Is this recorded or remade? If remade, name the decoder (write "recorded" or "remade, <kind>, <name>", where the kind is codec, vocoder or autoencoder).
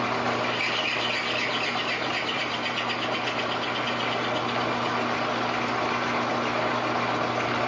recorded